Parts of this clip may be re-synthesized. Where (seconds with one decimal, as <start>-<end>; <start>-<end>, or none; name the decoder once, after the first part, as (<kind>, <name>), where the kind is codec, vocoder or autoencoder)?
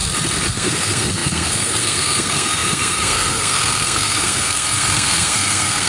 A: 0.5-5.9 (codec, SNAC)